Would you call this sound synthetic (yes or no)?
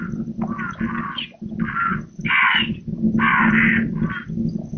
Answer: no